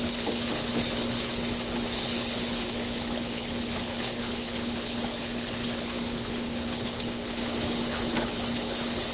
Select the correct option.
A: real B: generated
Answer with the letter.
B